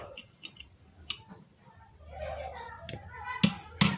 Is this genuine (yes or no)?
yes